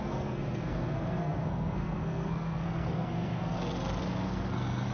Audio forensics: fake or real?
fake